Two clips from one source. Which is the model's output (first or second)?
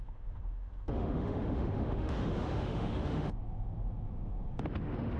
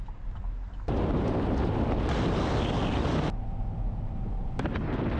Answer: first